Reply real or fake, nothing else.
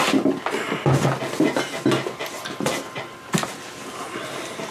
real